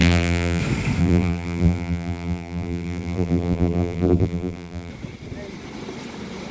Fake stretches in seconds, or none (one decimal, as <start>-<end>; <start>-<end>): 0.0-0.6; 1.0-4.9